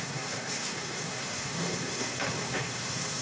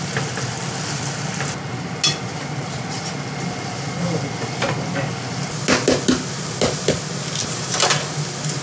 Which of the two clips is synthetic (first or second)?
first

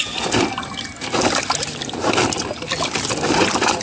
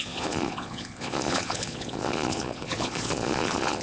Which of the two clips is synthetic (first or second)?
second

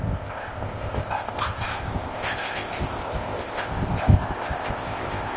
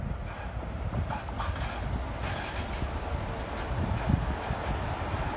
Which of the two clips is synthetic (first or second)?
first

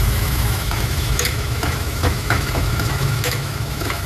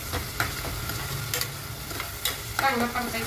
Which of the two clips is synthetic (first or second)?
first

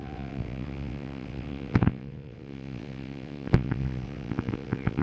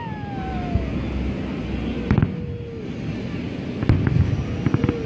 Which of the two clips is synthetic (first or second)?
first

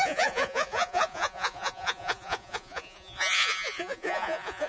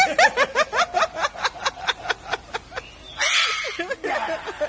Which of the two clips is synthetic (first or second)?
first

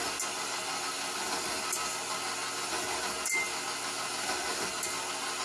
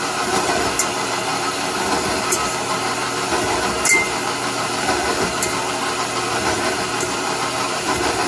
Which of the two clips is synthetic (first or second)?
second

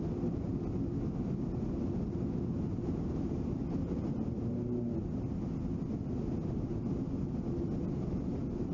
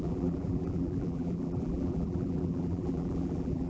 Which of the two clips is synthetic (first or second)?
second